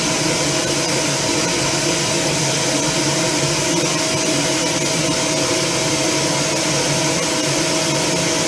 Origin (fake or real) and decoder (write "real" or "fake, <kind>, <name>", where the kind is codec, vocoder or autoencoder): real